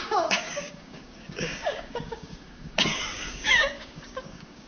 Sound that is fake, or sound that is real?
fake